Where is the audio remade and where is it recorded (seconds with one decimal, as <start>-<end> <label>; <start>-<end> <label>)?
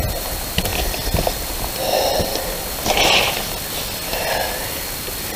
0.0-5.4 recorded